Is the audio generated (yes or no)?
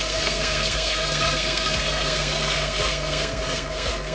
yes